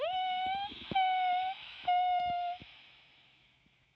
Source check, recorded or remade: remade